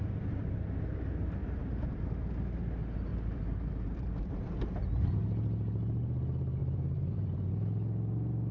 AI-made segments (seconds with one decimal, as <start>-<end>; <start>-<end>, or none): 1.4-2.0; 3.1-4.6; 6.6-7.5